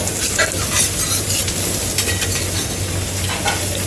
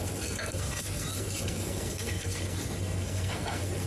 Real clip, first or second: first